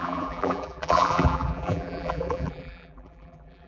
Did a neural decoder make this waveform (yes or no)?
yes